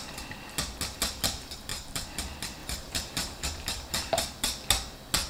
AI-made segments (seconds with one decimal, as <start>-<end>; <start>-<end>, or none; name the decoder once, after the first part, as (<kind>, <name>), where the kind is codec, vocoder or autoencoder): 1.7-2.2 (vocoder, BigVGAN v2); 2.6-4.2